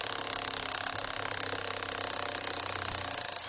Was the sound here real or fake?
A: real